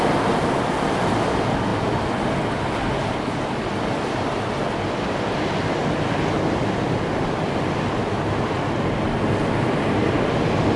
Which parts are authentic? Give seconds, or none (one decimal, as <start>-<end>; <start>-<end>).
0.0-10.8